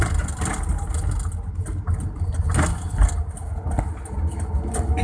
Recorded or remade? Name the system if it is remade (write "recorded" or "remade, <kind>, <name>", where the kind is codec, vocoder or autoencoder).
recorded